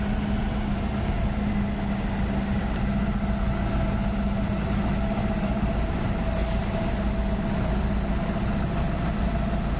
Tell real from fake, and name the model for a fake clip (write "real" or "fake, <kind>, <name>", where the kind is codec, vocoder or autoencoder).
real